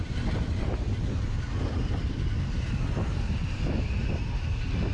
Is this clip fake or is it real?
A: real